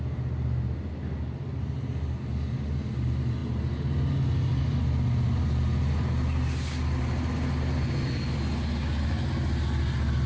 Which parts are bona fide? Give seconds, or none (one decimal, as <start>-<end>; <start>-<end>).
0.0-10.3